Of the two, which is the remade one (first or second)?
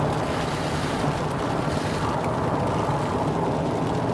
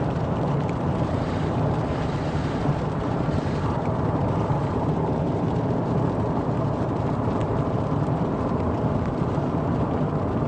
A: second